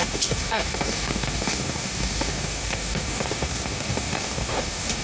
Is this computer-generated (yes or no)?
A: yes